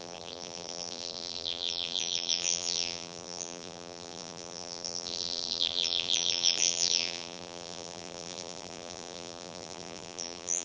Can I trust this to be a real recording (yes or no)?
no